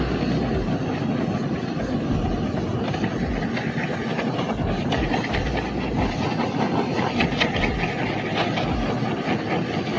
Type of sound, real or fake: real